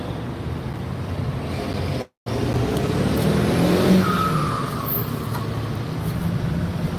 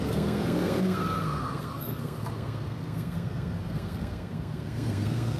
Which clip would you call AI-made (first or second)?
second